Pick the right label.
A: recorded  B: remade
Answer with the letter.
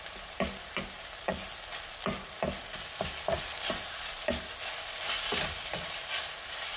A